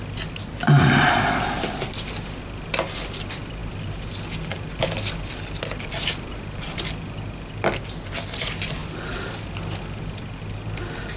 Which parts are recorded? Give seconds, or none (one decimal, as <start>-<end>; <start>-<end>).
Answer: 0.0-11.2